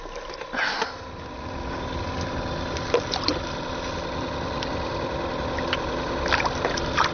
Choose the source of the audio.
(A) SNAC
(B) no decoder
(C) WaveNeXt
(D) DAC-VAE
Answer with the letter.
B